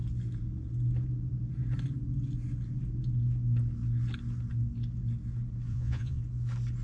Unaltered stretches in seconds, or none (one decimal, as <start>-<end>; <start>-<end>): 0.0-5.7; 6.2-6.8